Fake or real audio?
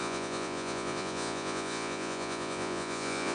fake